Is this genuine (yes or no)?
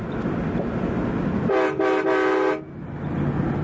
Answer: yes